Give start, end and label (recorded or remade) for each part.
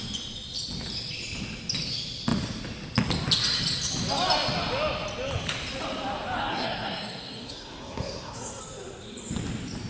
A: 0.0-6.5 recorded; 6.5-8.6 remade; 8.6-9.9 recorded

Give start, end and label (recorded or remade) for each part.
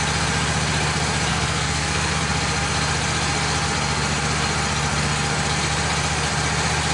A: 0.0-1.3 recorded; 1.3-2.2 remade; 2.2-6.9 recorded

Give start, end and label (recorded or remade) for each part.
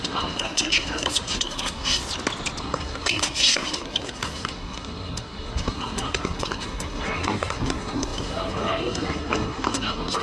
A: 0.0-2.0 remade; 2.0-2.6 recorded; 2.6-10.2 remade